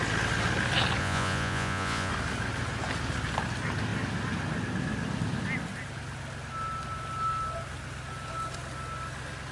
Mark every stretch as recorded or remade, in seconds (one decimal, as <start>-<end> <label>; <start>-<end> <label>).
0.0-1.0 recorded; 1.0-2.1 remade; 2.1-9.5 recorded